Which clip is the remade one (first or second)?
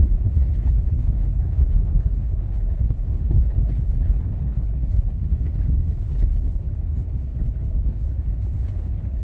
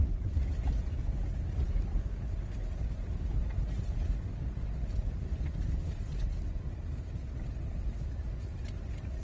first